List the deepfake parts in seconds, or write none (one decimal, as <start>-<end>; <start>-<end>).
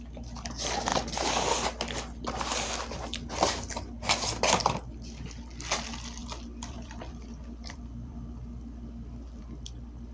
6.2-9.4